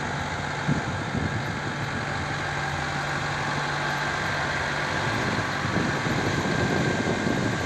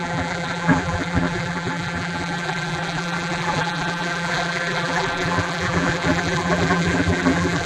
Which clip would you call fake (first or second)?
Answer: second